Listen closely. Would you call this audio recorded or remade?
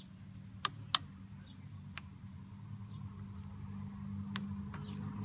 recorded